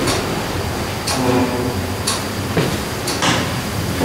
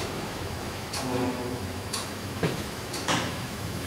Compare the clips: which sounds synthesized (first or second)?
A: second